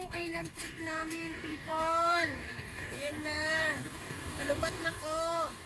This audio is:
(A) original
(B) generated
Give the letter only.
B